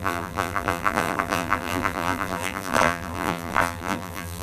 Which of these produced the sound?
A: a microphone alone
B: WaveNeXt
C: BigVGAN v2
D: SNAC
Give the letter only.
C